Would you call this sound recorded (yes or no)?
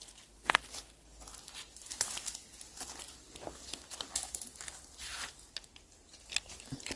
yes